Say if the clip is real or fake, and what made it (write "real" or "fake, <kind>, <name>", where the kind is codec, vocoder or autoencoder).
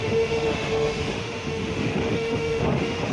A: fake, autoencoder, DAC-VAE